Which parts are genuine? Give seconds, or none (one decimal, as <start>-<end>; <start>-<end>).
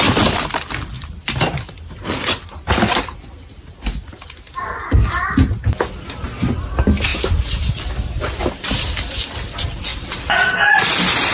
0.0-11.3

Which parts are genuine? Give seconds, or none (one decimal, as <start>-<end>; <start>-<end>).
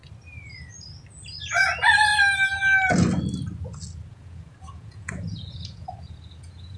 0.0-4.1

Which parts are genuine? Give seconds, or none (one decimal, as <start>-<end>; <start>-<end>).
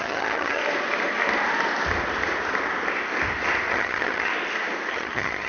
0.6-3.7; 4.3-4.9